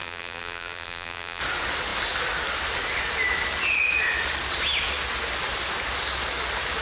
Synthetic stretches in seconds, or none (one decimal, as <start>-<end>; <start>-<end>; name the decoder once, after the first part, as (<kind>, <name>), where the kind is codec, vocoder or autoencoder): 0.0-1.4 (vocoder, BigVGAN v2)